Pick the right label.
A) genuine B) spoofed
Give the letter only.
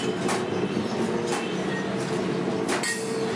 A